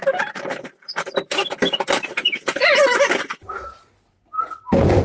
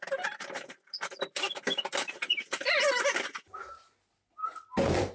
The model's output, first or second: first